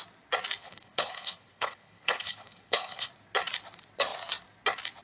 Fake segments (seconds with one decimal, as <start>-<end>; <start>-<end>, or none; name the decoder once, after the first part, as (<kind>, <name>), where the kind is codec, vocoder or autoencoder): 0.6-3.1 (codec, HILCodec)

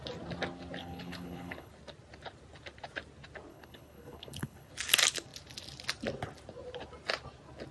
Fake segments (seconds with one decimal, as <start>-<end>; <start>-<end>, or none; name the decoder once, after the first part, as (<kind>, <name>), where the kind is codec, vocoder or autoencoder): 0.8-1.7 (codec, HILCodec); 3.5-4.7